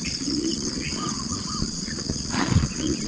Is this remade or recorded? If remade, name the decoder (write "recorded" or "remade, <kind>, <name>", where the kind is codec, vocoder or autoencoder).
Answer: remade, vocoder, Vocos